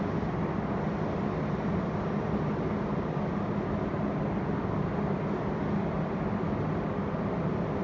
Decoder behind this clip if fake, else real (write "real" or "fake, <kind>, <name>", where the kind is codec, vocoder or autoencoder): real